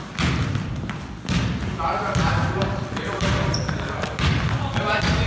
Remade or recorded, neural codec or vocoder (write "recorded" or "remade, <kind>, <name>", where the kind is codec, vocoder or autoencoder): remade, vocoder, BigVGAN v2